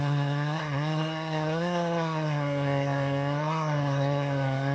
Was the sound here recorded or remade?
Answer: remade